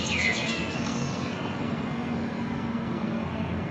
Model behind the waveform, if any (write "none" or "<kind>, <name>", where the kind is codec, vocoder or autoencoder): codec, SNAC